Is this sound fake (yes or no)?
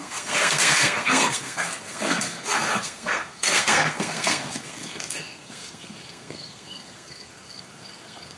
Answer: yes